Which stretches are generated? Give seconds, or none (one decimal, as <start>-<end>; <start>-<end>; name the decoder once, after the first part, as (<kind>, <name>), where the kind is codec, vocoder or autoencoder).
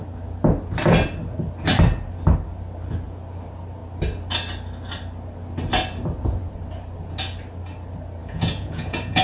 8.2-9.2 (vocoder, Vocos)